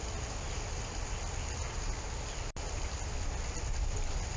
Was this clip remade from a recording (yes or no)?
no